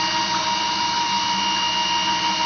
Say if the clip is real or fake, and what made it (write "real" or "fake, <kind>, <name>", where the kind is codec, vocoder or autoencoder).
real